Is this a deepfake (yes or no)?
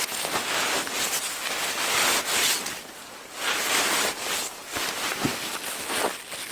no